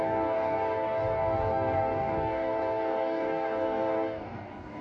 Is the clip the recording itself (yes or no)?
no